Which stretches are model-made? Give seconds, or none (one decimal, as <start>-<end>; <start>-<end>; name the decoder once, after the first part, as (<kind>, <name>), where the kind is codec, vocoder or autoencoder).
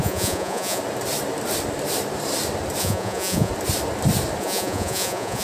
0.0-0.8 (vocoder, Vocos); 2.8-3.5; 4.4-5.4